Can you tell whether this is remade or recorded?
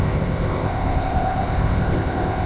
remade